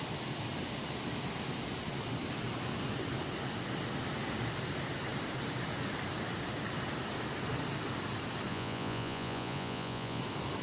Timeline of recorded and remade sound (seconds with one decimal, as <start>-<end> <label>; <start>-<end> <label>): 0.0-8.5 recorded; 8.5-10.2 remade; 10.2-10.6 recorded